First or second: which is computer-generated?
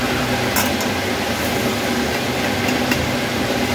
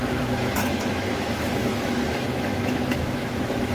second